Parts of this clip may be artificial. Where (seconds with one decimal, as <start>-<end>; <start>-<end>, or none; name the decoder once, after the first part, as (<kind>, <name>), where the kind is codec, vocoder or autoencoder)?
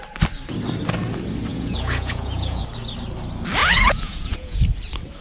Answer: 1.5-2.6 (vocoder, Vocos); 3.6-4.6